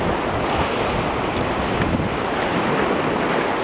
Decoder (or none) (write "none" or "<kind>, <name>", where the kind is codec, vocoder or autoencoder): none